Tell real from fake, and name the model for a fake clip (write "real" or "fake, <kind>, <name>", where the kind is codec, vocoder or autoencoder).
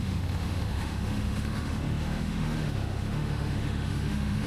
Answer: fake, autoencoder, DAC-VAE